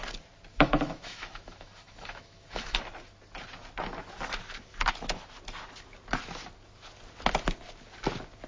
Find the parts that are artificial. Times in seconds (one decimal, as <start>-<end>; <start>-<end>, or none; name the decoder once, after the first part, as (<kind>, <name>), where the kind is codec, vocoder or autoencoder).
0.5-2.8 (autoencoder, DAC-VAE)